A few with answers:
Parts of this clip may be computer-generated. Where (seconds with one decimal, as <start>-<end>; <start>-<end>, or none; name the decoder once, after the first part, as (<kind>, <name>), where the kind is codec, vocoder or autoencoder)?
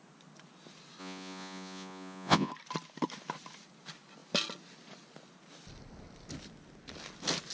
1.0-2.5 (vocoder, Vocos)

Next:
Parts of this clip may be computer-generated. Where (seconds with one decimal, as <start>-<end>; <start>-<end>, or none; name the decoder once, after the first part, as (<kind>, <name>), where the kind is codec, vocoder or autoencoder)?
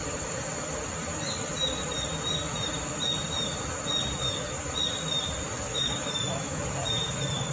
5.7-6.6 (autoencoder, DAC-VAE)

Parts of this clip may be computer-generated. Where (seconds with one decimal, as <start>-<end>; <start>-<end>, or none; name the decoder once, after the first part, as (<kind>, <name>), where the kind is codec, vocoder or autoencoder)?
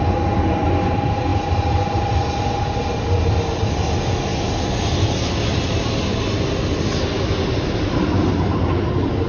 none